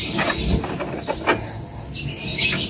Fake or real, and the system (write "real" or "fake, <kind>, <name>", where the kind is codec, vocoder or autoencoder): real